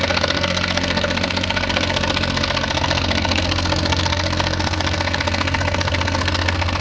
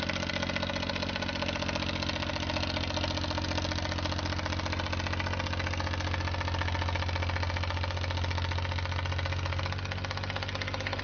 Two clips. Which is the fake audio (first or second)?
first